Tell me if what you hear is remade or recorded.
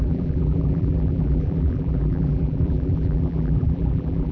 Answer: remade